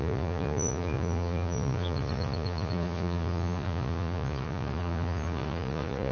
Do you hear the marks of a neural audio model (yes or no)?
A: yes